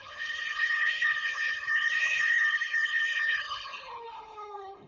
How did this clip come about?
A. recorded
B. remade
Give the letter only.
B